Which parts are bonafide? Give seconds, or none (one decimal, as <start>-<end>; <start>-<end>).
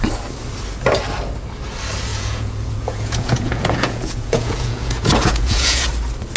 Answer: 0.0-2.1; 5.9-6.4